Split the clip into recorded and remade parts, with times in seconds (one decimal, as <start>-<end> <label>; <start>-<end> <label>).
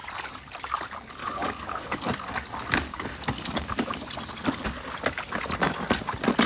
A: 0.0-1.2 recorded; 1.2-2.1 remade; 2.1-2.9 recorded; 2.9-4.1 remade; 4.1-6.5 recorded